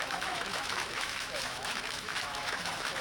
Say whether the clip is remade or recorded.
remade